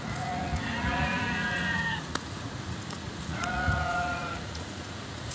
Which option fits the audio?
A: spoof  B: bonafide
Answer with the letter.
A